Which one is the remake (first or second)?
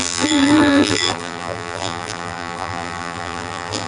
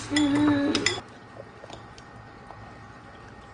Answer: first